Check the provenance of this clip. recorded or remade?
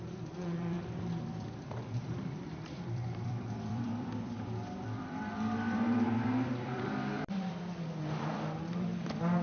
remade